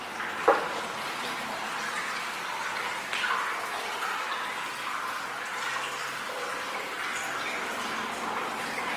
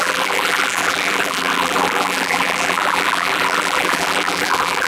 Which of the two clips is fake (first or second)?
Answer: second